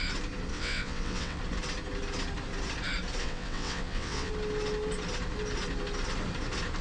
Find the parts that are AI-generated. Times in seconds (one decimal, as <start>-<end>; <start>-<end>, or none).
0.5-1.4; 3.2-4.3